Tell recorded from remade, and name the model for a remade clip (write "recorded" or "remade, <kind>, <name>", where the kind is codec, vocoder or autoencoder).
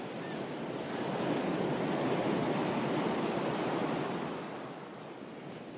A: recorded